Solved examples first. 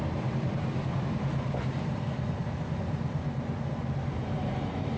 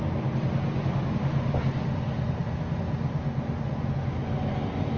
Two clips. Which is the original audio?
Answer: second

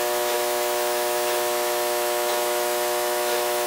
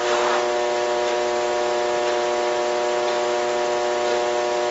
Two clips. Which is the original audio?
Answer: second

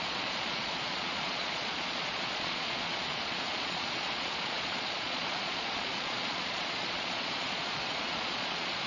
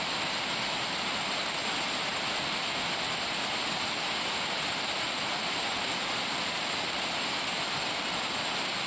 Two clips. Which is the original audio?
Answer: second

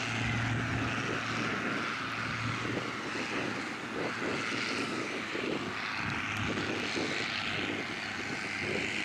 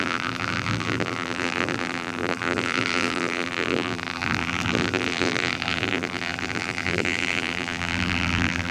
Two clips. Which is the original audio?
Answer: first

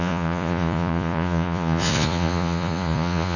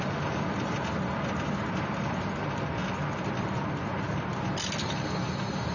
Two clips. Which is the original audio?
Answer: second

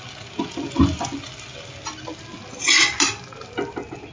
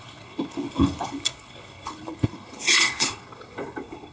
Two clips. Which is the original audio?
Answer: first